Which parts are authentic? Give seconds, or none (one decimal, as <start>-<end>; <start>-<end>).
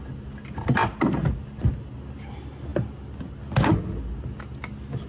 0.0-5.1